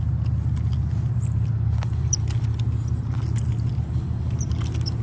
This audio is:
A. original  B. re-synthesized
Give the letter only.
A